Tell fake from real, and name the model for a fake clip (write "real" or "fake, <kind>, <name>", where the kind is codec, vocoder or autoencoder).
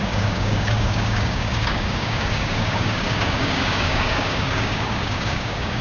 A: fake, codec, DAC